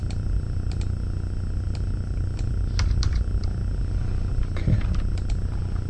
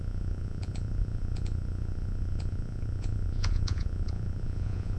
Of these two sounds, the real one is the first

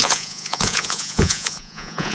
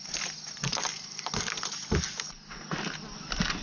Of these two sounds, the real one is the second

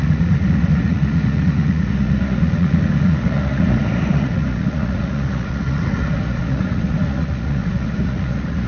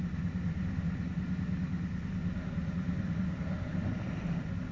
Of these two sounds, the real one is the second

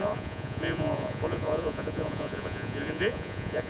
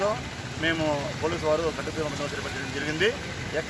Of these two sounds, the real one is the second